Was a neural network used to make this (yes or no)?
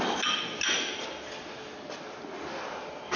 no